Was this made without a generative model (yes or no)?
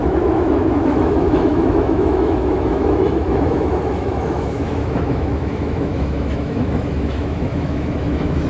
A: no